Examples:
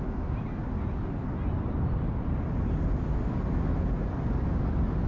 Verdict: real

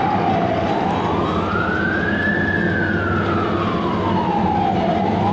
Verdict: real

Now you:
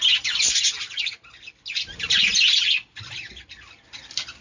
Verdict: real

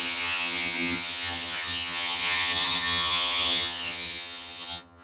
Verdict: fake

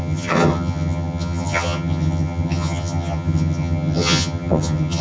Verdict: fake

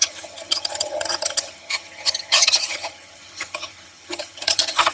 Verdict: fake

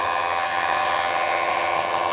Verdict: fake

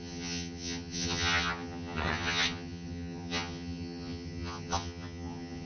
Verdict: fake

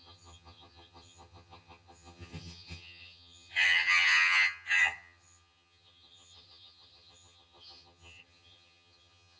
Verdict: fake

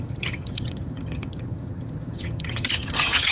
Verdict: fake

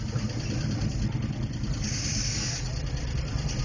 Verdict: real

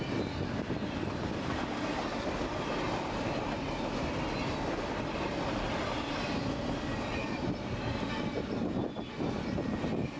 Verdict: real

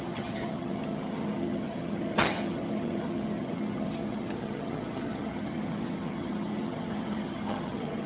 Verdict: fake